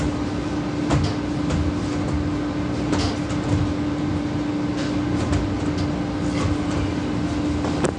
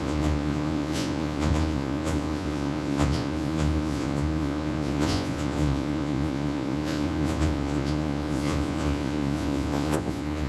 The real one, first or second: first